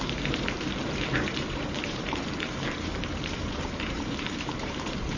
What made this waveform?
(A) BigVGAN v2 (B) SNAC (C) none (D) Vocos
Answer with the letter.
A